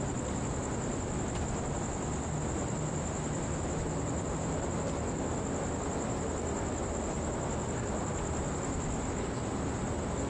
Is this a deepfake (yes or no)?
no